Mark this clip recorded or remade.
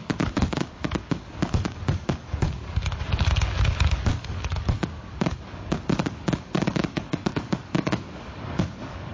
remade